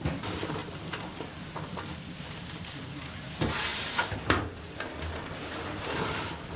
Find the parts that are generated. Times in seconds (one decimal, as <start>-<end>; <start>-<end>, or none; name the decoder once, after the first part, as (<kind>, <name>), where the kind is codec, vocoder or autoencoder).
0.6-3.2 (vocoder, BigVGAN v2)

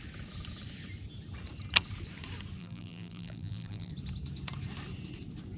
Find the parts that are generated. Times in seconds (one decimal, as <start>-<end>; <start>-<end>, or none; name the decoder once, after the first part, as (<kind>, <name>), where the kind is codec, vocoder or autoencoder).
2.6-3.9 (vocoder, BigVGAN v2)

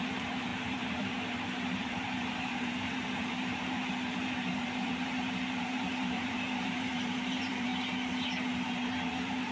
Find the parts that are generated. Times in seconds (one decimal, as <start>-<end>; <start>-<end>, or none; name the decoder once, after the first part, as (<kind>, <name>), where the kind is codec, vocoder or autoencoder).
0.0-7.7 (vocoder, BigVGAN v2); 8.5-9.5

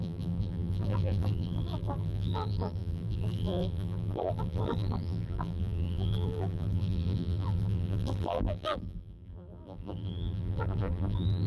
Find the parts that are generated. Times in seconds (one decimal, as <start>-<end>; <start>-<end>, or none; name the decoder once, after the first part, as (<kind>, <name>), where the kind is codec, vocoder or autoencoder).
0.0-11.5 (vocoder, BigVGAN v2)

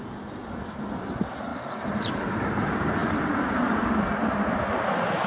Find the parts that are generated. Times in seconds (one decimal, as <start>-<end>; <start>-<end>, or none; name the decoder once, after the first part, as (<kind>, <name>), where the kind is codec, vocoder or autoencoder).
1.5-2.1 (vocoder, BigVGAN v2)

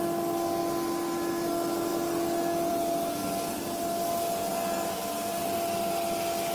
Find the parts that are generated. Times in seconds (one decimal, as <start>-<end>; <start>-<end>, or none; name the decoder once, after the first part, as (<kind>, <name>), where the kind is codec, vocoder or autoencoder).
0.6-1.3 (vocoder, BigVGAN v2); 4.5-5.4

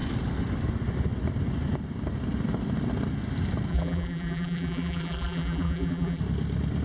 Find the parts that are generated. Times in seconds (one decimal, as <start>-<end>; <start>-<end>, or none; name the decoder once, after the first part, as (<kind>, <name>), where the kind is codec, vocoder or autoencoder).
3.7-6.2 (vocoder, BigVGAN v2)